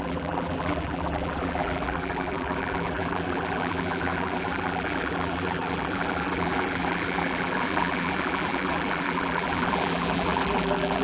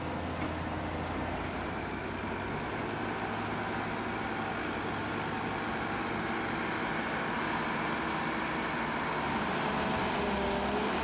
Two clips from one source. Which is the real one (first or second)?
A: second